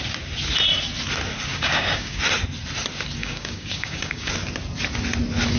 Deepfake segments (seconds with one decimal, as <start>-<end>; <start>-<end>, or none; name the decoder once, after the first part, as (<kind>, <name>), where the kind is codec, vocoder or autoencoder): 1.5-2.2 (codec, DAC); 3.2-4.3